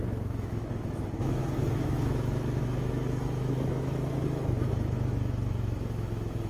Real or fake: fake